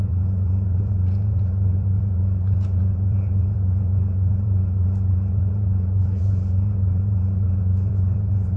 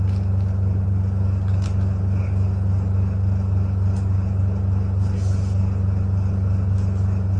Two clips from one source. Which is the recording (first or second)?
second